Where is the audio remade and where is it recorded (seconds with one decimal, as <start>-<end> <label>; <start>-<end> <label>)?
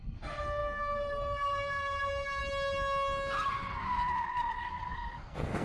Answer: 0.0-2.4 remade; 2.4-3.8 recorded; 3.8-5.6 remade